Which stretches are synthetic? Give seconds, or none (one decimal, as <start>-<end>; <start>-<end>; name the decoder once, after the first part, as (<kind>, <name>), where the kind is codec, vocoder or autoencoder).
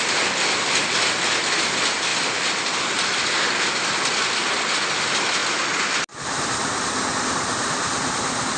none